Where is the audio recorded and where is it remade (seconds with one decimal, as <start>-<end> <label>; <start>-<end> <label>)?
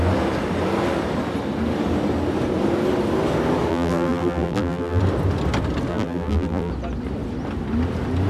0.0-3.7 recorded; 3.7-5.0 remade; 5.0-5.9 recorded; 5.9-6.7 remade; 6.7-8.3 recorded